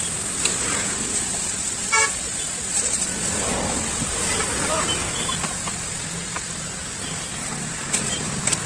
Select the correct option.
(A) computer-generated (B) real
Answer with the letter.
B